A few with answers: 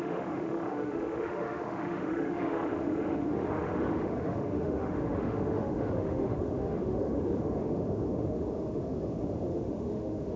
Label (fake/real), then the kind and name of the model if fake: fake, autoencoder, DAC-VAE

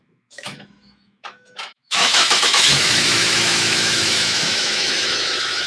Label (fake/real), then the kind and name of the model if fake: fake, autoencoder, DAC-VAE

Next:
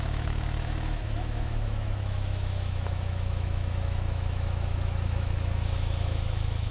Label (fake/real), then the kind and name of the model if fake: fake, autoencoder, DAC-VAE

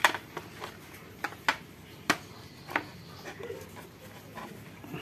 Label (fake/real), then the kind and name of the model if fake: real